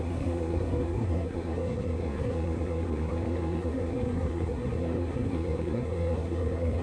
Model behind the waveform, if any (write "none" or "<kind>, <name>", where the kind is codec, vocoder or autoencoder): codec, SNAC